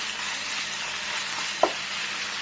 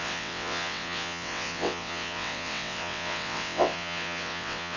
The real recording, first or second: first